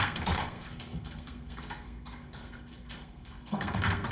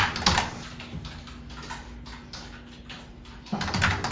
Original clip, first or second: second